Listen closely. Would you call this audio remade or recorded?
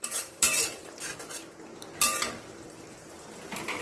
remade